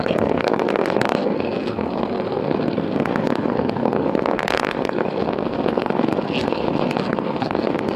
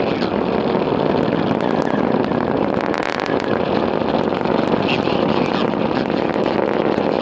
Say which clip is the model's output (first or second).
first